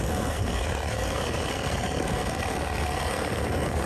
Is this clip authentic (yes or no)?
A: no